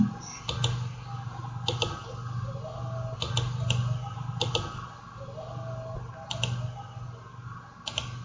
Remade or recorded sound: recorded